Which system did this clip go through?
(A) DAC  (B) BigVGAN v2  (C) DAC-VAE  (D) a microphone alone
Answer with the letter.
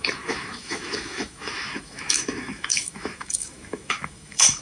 C